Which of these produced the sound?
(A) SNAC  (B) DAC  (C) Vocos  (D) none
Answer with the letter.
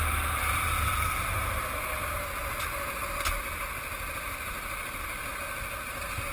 D